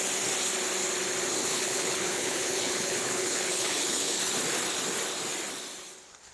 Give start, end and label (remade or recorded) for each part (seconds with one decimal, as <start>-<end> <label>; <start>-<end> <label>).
0.0-1.5 recorded; 1.5-4.2 remade; 4.2-6.3 recorded